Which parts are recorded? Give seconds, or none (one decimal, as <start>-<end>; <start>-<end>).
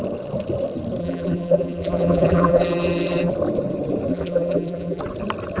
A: 0.0-1.0; 3.3-4.1; 5.0-5.6